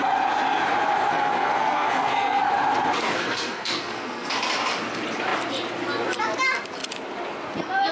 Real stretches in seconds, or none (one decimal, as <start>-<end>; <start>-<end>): 0.0-1.1; 2.5-3.2; 4.3-7.9